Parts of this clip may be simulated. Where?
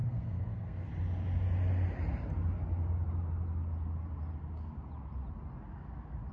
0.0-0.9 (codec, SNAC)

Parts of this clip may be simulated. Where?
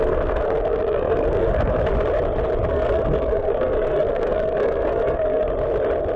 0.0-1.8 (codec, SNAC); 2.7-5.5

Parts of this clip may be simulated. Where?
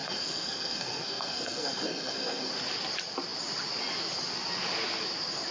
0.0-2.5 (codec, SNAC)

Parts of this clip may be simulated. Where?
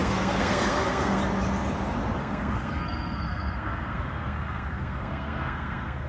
0.0-1.2 (codec, SNAC); 2.2-6.1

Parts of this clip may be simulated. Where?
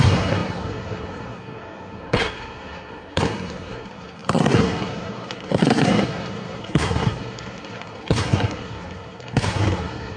0.0-10.2 (codec, SNAC)